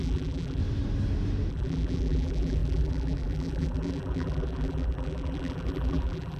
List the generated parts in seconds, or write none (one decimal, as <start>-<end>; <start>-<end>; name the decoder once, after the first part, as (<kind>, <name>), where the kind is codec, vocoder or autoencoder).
0.0-0.6 (vocoder, BigVGAN v2); 1.5-6.4